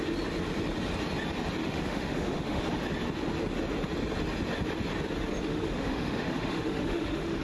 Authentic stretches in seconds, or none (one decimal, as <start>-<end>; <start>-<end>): 0.0-1.6; 2.6-5.4